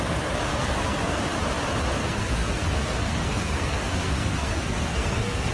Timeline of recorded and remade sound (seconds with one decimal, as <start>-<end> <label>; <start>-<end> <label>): 0.0-0.5 recorded; 0.5-1.2 remade; 1.2-2.0 recorded; 2.0-5.5 remade